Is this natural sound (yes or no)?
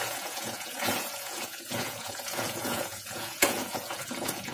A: no